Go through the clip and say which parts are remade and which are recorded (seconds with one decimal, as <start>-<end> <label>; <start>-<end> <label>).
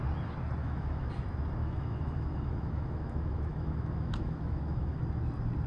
0.0-0.6 recorded; 0.6-1.1 remade; 1.1-1.6 recorded; 1.6-5.0 remade; 5.0-5.7 recorded